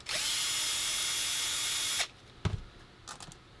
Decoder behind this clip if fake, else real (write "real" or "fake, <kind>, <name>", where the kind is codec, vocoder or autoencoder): real